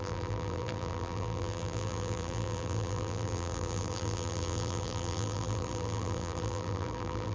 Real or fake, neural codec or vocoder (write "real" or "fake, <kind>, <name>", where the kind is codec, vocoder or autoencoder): fake, vocoder, BigVGAN v2